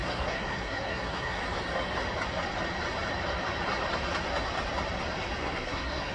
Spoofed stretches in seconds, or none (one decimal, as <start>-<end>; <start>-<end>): 0.0-1.4; 5.4-6.1